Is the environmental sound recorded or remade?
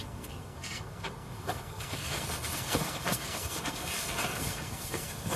remade